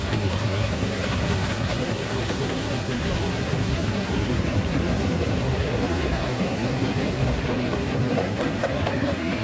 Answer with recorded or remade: remade